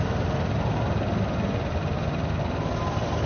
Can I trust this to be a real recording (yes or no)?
yes